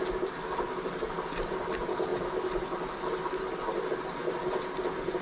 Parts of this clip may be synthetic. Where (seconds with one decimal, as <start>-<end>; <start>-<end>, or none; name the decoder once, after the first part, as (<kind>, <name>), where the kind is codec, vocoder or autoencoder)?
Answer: none